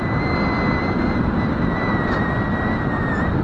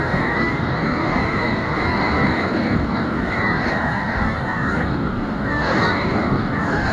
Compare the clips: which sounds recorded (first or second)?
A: first